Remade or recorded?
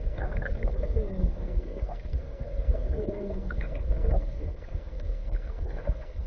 remade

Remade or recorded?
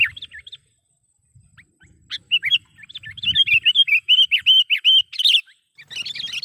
recorded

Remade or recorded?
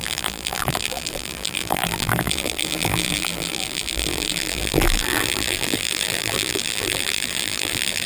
remade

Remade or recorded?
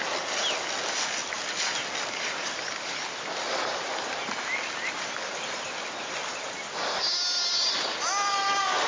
recorded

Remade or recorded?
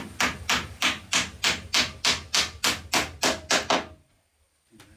recorded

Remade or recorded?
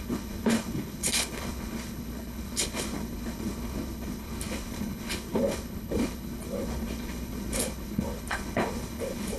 remade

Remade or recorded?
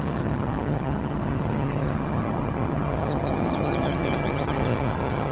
remade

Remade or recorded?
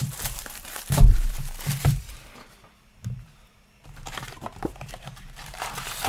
remade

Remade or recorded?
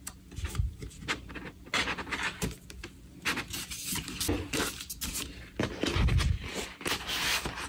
recorded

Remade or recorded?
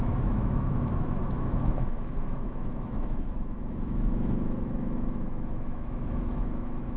remade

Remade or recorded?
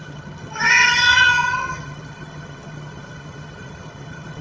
remade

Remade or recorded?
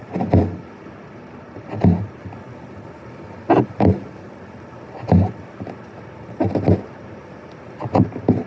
recorded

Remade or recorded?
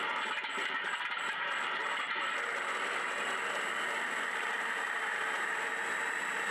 recorded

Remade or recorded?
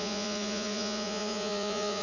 remade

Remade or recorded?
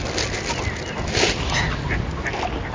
recorded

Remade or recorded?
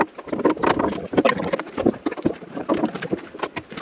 recorded